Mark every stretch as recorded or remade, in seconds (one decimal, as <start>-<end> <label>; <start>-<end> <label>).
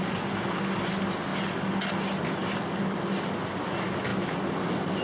0.0-5.0 recorded